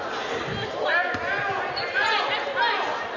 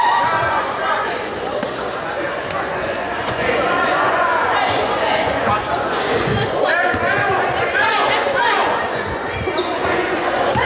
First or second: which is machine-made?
second